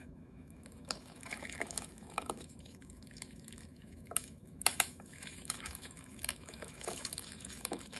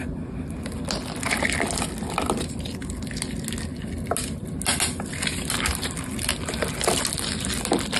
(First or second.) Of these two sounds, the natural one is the second